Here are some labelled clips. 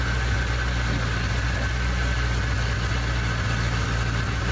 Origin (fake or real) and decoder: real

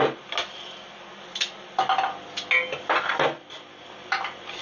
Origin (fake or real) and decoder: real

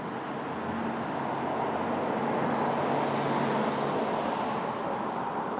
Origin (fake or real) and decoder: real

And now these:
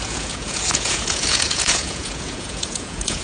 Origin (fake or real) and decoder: fake, vocoder, Vocos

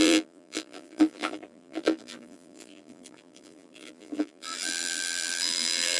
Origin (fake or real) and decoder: fake, vocoder, BigVGAN v2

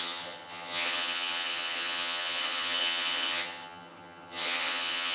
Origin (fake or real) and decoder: fake, vocoder, HiFi-GAN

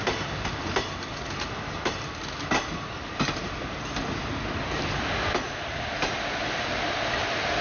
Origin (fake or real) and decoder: real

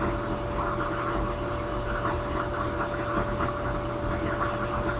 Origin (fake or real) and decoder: real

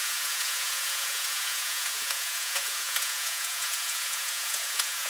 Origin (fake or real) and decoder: fake, vocoder, Vocos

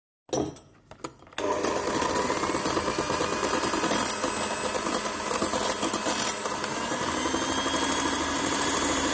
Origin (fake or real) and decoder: real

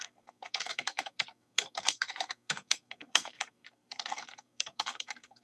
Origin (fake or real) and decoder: fake, codec, SNAC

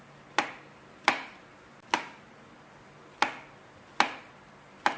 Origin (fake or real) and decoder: real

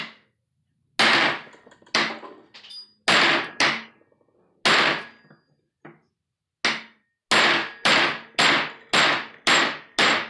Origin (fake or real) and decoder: real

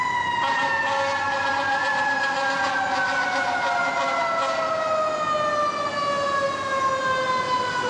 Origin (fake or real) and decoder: real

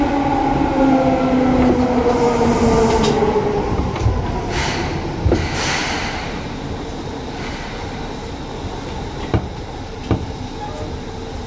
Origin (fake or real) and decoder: real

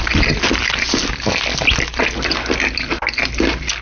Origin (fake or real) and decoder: real